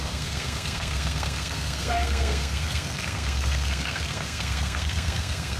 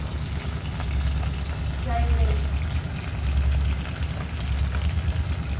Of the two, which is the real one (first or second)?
second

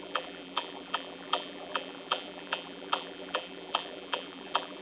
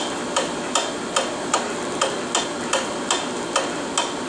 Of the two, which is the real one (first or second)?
second